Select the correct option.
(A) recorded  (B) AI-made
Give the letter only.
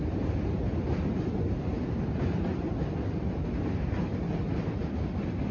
A